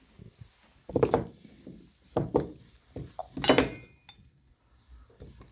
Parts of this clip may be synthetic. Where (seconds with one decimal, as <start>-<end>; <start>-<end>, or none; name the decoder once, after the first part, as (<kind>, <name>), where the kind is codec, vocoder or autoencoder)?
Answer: none